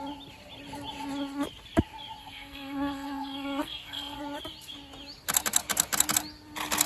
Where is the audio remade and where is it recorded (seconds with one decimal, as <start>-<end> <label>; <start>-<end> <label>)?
0.0-2.2 recorded; 2.2-4.2 remade; 4.2-6.9 recorded